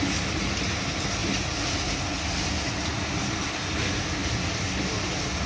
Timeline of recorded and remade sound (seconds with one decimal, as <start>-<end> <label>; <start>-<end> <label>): 0.0-2.9 recorded; 2.9-3.8 remade; 3.8-4.2 recorded; 4.2-5.5 remade